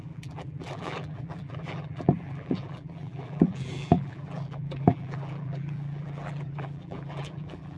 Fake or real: fake